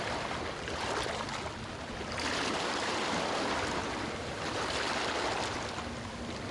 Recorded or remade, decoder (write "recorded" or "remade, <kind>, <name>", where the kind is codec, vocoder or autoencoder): recorded